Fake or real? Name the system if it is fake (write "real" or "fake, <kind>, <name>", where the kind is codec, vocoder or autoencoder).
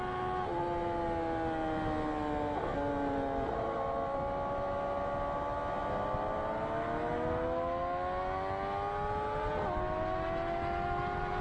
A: real